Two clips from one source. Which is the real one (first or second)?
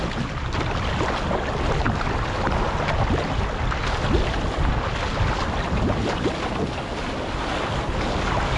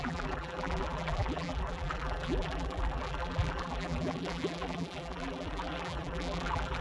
first